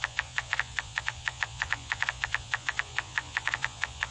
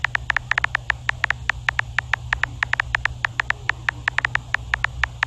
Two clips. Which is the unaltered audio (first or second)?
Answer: second